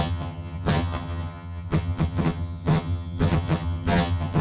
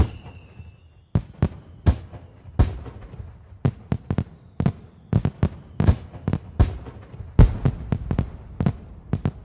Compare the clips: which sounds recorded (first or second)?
second